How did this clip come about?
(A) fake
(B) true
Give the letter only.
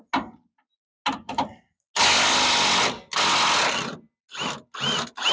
B